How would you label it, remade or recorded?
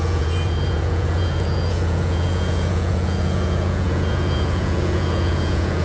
remade